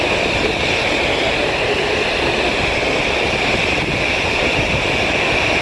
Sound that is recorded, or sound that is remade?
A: recorded